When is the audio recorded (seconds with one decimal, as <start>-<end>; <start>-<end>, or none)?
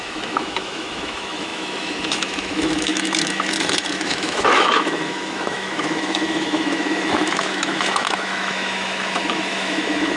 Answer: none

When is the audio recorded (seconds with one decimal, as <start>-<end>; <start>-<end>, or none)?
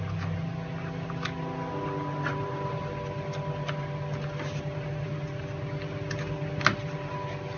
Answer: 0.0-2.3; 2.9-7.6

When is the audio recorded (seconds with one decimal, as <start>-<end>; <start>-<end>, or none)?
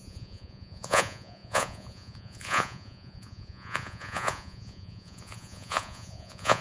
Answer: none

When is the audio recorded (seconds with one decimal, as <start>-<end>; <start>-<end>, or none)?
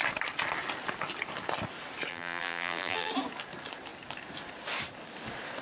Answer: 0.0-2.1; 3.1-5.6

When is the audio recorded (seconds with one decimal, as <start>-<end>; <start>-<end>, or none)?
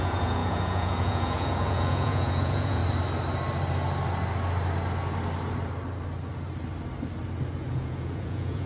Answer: 2.8-7.7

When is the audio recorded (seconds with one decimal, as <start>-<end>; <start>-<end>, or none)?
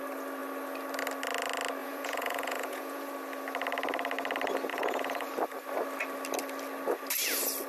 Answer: 0.0-1.8; 3.1-4.7; 5.3-7.7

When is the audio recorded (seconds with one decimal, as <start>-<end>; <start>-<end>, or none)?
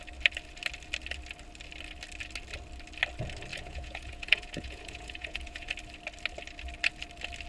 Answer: 0.0-3.5; 5.7-7.5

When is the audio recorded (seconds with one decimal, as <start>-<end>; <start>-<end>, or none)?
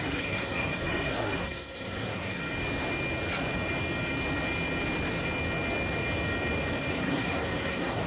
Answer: 2.4-6.9